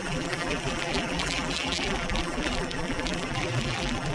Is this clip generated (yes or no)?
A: yes